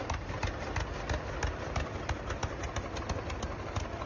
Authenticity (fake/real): real